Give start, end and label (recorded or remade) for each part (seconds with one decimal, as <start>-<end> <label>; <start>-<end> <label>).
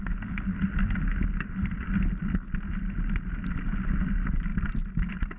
0.0-5.4 recorded